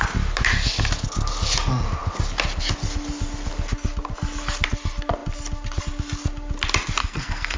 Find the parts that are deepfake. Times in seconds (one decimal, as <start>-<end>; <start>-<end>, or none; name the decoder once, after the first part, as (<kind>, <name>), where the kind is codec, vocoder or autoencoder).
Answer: 7.0-7.6 (codec, SNAC)